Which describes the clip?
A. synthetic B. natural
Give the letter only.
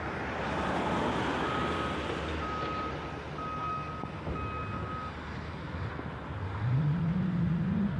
B